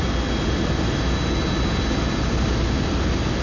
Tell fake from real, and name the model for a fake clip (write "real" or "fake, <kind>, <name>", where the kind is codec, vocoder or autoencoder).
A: real